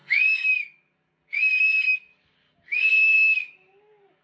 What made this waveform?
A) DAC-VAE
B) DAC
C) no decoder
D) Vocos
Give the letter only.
B